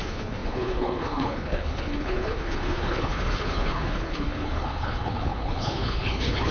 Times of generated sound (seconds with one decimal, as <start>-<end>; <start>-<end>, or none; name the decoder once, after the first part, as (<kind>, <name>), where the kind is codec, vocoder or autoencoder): 0.0-6.5 (codec, HILCodec)